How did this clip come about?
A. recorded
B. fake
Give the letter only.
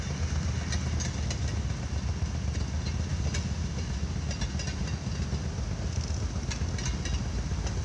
A